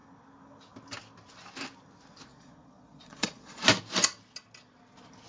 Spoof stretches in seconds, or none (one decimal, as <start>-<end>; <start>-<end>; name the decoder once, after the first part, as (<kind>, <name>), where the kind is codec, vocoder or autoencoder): 2.3-3.6 (vocoder, Vocos)